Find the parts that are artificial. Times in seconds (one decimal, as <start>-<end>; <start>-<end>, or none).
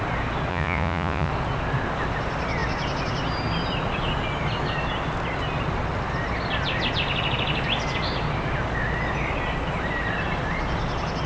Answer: 0.5-1.3